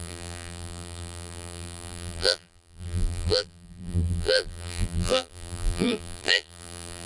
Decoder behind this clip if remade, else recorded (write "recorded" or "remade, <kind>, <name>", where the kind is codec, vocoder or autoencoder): remade, vocoder, BigVGAN v2